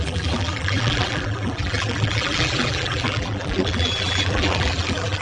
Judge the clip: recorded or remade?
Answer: remade